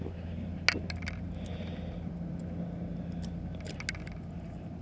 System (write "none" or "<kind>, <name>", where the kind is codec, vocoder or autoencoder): none